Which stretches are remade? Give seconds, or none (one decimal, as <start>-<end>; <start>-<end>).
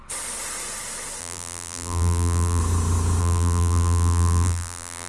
1.2-2.6; 3.2-5.1